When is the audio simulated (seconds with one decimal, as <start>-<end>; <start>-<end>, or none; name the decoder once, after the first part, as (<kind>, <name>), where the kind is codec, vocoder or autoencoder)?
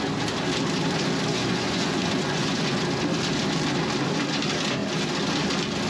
1.3-2.8 (vocoder, Vocos)